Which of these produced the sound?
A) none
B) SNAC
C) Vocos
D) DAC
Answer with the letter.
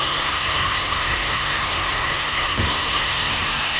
B